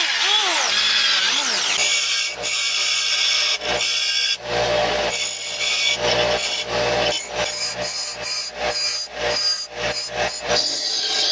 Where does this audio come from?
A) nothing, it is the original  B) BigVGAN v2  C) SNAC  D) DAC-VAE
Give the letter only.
A